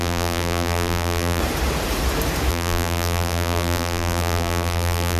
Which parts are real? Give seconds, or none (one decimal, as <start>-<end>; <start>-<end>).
1.4-2.5